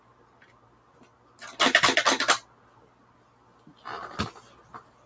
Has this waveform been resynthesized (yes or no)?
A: no